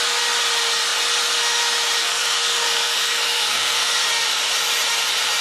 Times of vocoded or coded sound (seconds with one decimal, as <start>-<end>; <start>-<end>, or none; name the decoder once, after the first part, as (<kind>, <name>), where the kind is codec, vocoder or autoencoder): 2.0-4.0 (codec, SNAC)